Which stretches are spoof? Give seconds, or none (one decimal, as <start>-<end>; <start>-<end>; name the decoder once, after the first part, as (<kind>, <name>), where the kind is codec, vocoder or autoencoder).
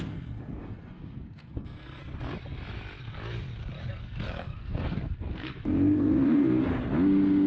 0.0-2.0 (codec, SNAC); 3.9-6.7